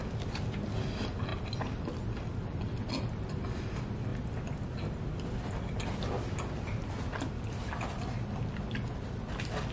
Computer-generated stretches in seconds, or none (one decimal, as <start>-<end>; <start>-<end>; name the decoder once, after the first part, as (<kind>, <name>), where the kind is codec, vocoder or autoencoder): none